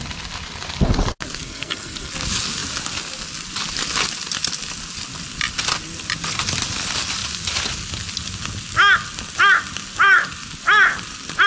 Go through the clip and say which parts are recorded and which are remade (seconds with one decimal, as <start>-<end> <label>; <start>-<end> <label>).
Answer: 0.0-1.4 recorded; 1.4-2.1 remade; 2.1-11.5 recorded